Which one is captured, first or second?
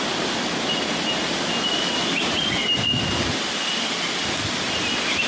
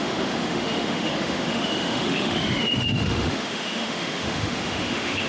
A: first